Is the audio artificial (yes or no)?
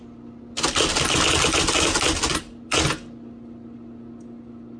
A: no